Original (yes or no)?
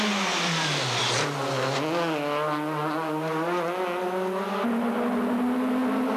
yes